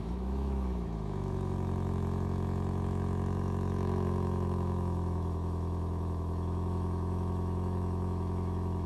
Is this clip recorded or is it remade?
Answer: remade